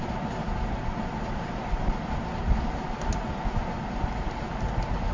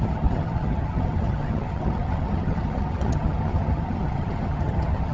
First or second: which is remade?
second